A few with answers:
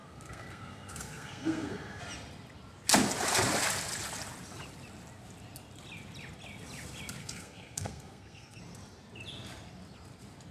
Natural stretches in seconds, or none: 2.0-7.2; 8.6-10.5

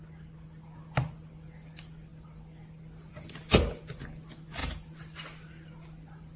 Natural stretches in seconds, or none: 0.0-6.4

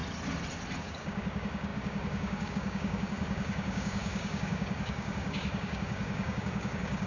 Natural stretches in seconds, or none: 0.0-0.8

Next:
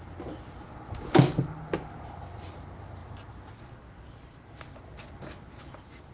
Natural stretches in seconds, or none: 0.0-6.1

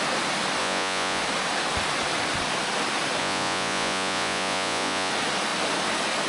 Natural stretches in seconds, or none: 0.0-0.6; 1.2-3.2; 5.1-6.3

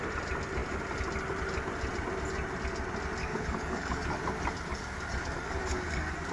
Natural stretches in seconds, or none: 0.0-3.2; 4.2-4.7

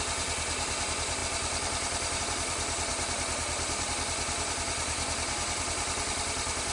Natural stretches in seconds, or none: 2.9-4.3

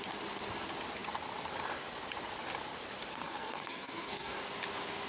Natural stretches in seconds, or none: 0.0-3.1; 4.4-5.1